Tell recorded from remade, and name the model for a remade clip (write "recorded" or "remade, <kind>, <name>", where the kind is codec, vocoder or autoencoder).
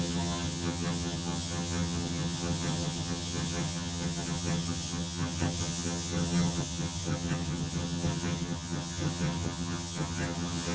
remade, vocoder, HiFi-GAN